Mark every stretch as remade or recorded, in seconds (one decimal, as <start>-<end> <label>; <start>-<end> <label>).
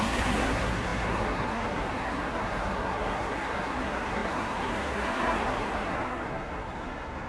0.0-7.3 remade